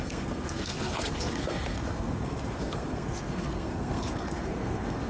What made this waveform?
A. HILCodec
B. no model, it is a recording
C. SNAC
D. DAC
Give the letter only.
C